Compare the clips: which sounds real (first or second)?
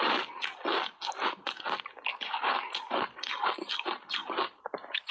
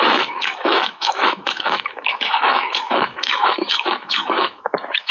first